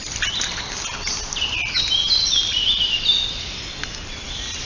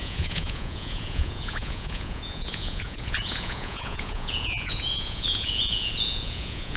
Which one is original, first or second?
first